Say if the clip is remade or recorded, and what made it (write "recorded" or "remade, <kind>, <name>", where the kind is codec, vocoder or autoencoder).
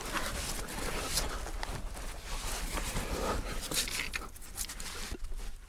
recorded